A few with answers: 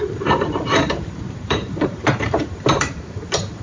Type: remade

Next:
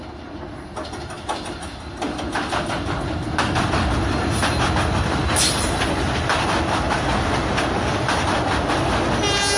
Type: recorded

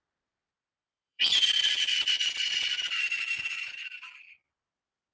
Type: remade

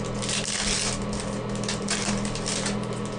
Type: recorded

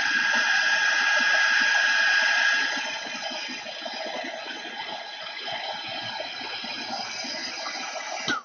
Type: recorded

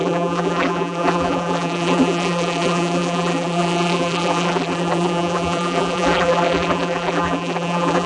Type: remade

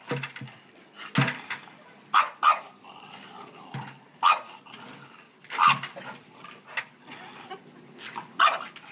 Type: recorded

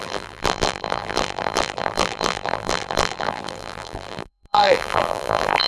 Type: remade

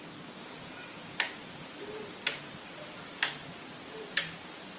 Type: recorded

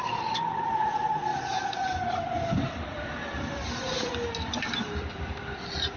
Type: remade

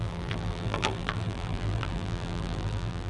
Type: remade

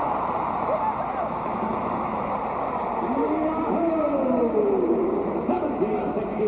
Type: remade